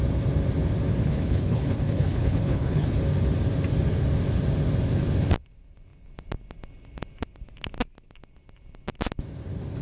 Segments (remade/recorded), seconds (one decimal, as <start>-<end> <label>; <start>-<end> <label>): 0.0-1.0 recorded; 1.0-3.0 remade; 3.0-9.8 recorded